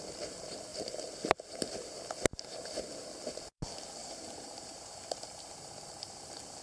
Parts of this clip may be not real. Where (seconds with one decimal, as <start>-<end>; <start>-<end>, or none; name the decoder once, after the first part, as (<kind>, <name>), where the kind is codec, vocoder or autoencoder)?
4.0-5.8 (vocoder, BigVGAN v2)